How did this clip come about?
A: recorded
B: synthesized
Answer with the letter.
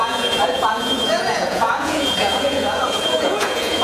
B